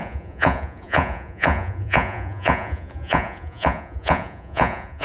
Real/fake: fake